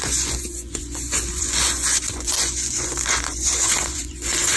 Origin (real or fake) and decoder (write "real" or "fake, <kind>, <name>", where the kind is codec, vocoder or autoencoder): fake, vocoder, Vocos